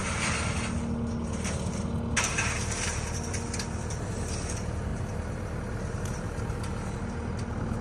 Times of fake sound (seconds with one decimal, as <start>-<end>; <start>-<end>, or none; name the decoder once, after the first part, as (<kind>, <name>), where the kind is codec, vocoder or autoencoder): none